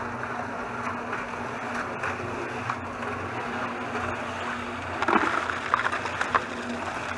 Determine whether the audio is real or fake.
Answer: real